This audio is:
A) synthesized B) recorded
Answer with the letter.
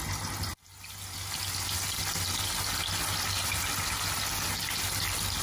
B